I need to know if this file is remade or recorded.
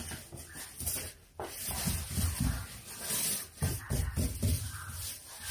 recorded